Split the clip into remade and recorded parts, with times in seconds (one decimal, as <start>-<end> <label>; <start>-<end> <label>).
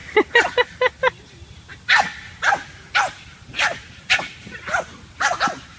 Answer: 0.0-1.0 recorded; 1.0-1.7 remade; 1.7-2.5 recorded; 2.5-5.8 remade